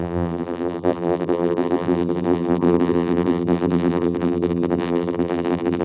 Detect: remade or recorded remade